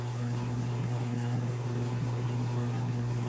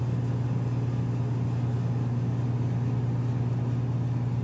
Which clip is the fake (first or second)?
first